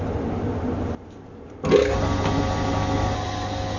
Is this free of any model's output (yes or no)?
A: yes